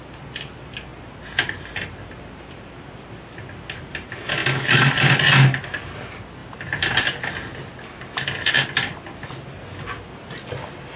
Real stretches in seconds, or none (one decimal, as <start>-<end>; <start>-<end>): 0.0-11.0